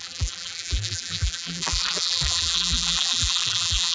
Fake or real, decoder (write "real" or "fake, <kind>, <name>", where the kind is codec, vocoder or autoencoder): fake, vocoder, BigVGAN v2